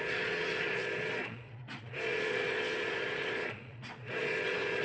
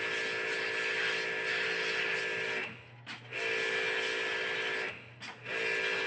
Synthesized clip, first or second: first